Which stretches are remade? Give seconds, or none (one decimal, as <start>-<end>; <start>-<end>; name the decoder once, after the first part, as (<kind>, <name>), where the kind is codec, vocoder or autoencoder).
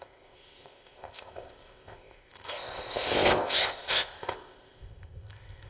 0.0-5.7 (codec, ZipCodec)